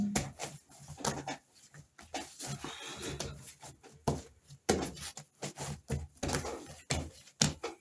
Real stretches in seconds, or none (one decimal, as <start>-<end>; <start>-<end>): 0.0-7.8